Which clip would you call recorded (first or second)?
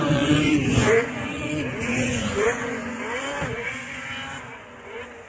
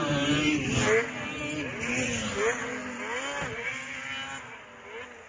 second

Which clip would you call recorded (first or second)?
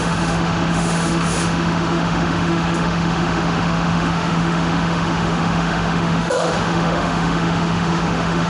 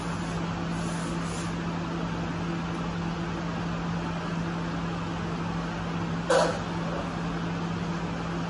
second